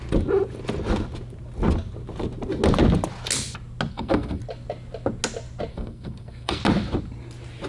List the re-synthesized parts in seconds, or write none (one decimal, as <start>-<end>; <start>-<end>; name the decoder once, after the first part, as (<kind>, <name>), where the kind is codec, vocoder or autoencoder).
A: 3.9-4.4 (codec, SNAC); 5.7-6.6